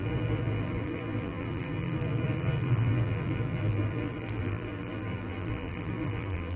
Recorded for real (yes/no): no